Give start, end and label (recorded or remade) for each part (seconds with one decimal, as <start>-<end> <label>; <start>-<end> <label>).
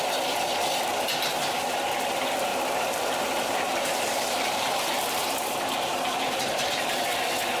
0.0-2.5 recorded; 2.5-7.1 remade; 7.1-7.6 recorded